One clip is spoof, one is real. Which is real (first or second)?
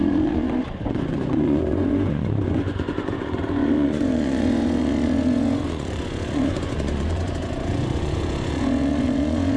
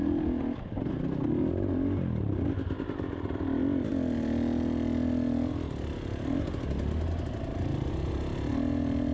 second